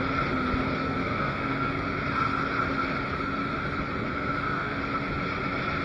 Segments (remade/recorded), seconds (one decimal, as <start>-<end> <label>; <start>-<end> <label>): 0.0-0.8 recorded; 0.8-2.0 remade; 2.0-4.1 recorded; 4.1-4.8 remade; 4.8-5.8 recorded